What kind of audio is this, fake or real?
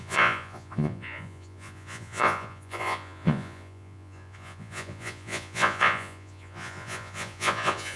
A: fake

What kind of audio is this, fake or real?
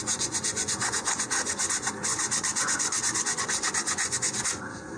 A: fake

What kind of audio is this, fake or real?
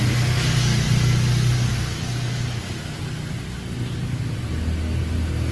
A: real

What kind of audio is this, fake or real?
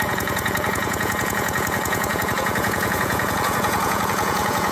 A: fake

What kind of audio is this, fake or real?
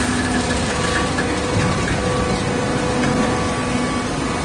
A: real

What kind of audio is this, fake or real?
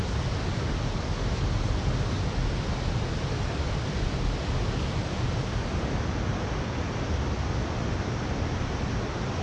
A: real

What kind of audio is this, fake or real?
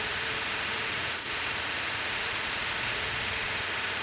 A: fake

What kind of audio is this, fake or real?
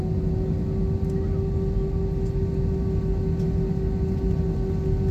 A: real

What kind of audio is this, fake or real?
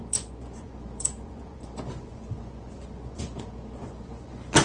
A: fake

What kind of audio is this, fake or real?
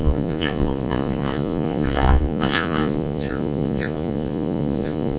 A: fake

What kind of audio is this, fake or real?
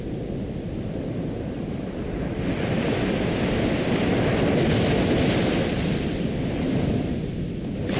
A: real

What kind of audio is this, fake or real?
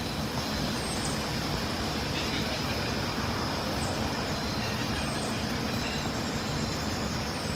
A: real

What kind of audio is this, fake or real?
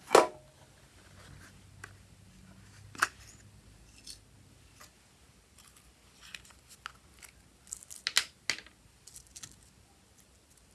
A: real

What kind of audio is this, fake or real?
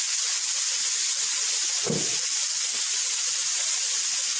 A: real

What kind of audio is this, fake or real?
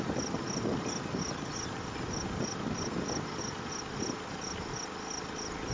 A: real